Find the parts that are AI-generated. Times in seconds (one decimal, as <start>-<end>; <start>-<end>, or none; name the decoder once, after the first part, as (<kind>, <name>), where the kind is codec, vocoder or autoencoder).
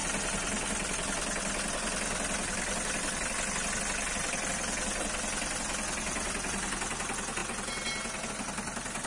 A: none